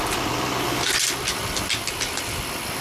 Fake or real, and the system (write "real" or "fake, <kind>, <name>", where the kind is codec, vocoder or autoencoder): real